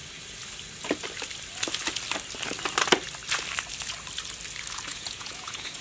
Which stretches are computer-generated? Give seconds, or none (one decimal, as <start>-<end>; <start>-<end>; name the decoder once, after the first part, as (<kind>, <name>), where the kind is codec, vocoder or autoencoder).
4.9-5.8 (vocoder, Vocos)